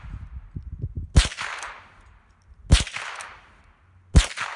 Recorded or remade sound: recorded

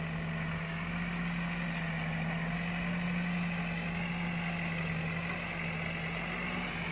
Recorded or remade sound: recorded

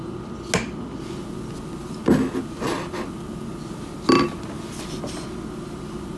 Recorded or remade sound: recorded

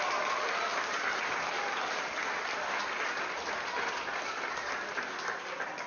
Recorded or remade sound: recorded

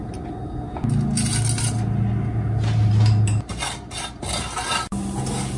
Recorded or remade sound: recorded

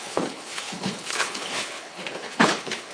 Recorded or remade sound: remade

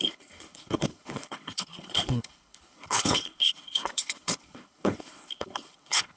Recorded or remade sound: remade